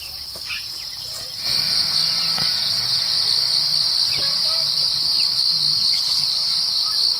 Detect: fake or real real